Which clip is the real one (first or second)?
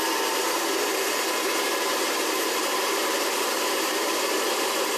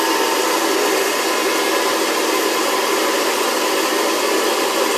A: second